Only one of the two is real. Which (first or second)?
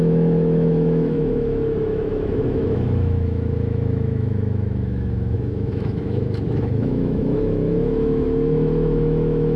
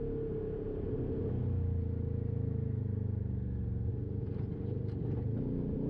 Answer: second